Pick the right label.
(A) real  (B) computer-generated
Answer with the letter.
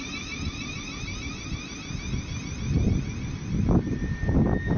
A